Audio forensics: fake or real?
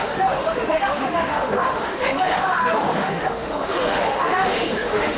fake